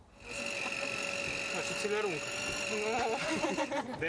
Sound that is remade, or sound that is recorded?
recorded